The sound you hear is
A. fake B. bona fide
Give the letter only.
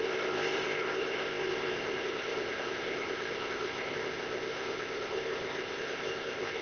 A